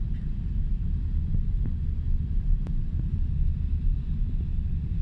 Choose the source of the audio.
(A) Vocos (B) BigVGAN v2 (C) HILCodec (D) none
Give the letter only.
B